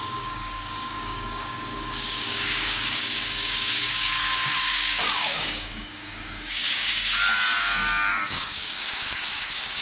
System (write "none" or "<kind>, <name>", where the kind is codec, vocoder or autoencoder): codec, DAC